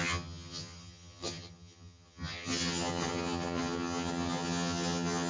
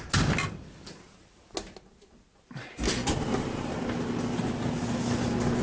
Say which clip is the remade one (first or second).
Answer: first